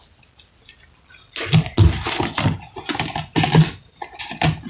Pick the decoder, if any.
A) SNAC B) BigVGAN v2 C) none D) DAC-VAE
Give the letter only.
C